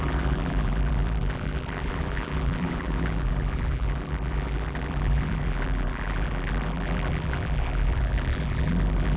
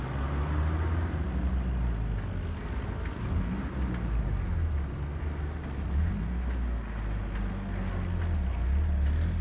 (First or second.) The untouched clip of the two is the second